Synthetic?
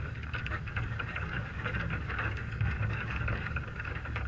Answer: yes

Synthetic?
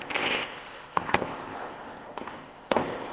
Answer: yes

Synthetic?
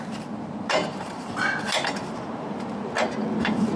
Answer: yes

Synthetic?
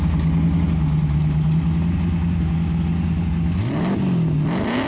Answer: no